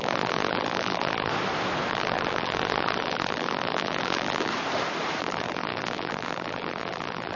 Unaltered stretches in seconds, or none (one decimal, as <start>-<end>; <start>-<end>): 1.3-1.9; 4.5-5.2